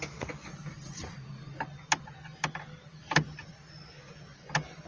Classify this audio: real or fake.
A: real